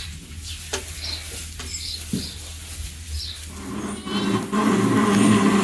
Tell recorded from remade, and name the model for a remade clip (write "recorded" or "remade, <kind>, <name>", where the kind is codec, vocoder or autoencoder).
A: recorded